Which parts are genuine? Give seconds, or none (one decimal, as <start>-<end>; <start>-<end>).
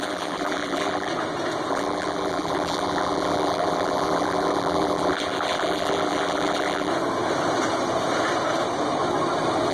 1.1-1.7; 6.9-9.7